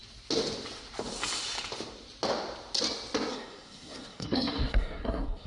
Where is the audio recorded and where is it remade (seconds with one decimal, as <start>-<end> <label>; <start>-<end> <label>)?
0.0-3.3 recorded; 3.3-5.5 remade